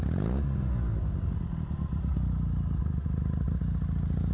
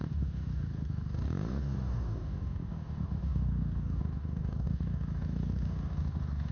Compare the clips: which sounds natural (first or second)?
first